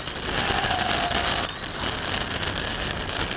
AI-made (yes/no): no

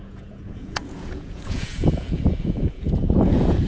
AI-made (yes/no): yes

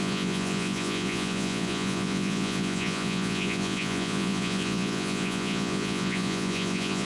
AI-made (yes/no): yes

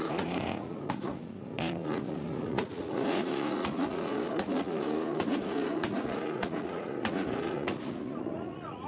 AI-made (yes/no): yes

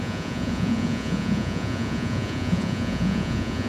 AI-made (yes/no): yes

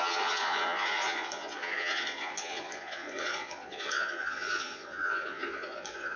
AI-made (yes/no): yes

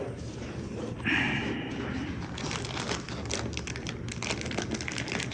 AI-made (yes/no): no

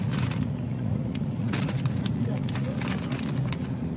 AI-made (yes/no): yes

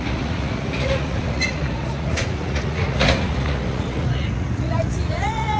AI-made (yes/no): yes